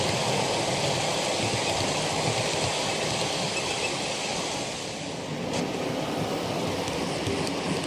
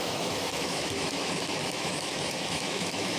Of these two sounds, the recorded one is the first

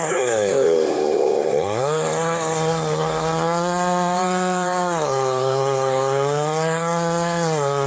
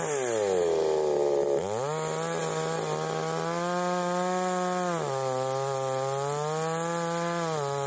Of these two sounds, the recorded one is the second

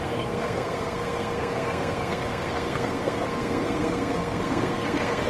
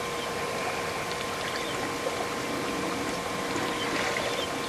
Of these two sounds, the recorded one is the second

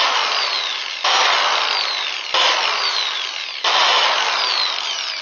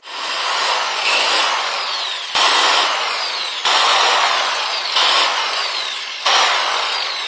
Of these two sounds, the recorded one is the first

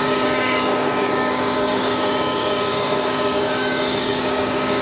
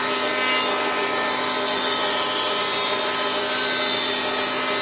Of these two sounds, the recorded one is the second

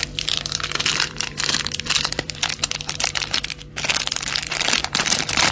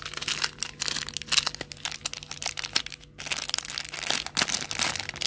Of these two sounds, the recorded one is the second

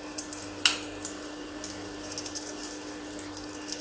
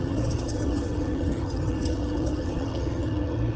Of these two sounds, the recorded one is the first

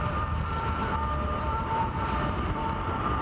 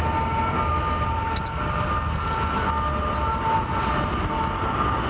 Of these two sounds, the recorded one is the second